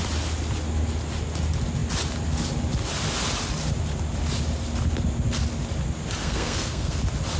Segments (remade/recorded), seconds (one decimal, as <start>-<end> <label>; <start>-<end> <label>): 0.0-6.2 recorded; 6.2-7.0 remade; 7.0-7.4 recorded